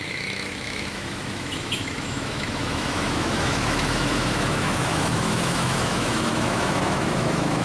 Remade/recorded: remade